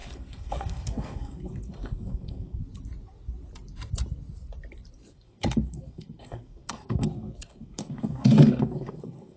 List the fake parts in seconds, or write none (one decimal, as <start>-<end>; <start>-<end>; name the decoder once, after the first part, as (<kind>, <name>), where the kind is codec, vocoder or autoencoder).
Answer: 0.0-2.6 (codec, SNAC); 5.1-9.4